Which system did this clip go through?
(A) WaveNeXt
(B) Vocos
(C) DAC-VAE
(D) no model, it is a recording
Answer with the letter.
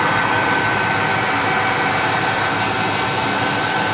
D